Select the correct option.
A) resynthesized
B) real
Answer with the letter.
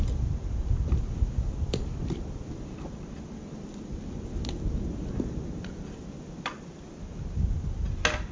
B